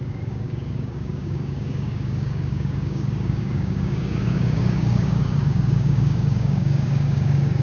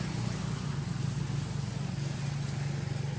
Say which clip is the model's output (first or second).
first